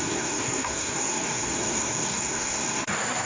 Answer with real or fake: fake